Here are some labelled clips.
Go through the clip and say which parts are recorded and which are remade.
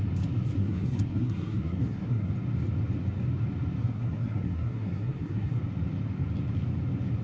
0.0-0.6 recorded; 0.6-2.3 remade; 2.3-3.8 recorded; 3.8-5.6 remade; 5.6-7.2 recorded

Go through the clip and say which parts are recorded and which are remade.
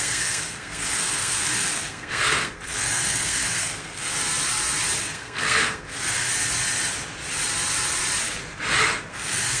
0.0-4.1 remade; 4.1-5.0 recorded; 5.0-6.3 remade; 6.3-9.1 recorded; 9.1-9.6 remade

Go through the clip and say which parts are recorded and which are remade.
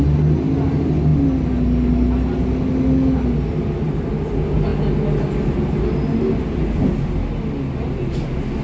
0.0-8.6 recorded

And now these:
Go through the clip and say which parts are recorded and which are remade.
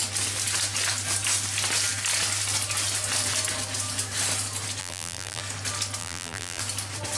0.0-4.8 recorded; 4.8-5.4 remade; 5.4-6.0 recorded; 6.0-6.6 remade; 6.6-7.2 recorded